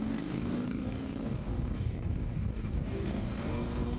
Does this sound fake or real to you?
fake